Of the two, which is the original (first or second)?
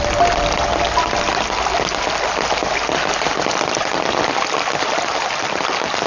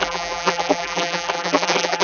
first